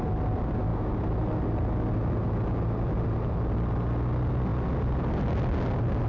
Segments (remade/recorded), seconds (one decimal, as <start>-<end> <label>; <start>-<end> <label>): 0.0-6.1 recorded